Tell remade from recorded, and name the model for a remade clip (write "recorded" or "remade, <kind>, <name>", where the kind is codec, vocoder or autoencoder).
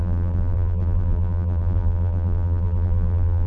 remade, vocoder, BigVGAN v2